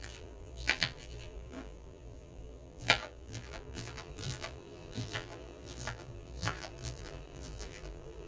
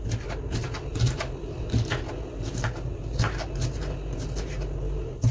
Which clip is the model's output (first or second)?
first